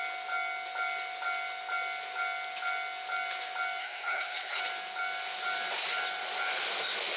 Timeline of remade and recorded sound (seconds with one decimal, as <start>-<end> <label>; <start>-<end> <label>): 0.0-3.8 recorded; 3.8-4.6 remade; 4.6-7.2 recorded